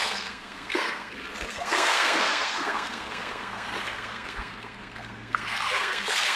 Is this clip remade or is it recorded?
remade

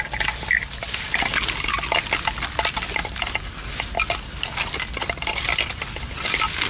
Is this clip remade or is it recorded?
recorded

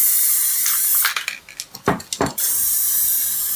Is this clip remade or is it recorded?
recorded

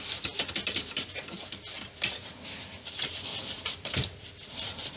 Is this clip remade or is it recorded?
recorded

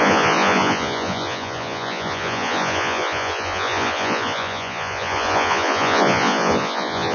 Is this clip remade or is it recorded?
remade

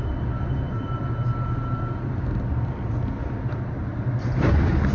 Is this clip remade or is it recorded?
recorded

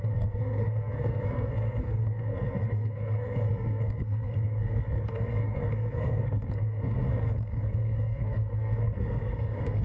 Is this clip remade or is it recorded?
remade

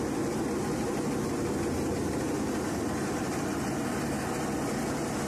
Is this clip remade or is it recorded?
recorded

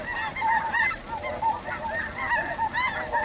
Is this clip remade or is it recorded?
recorded